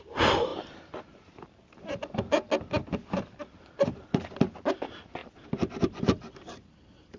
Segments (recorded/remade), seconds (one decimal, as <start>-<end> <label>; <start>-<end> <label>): 0.0-7.2 recorded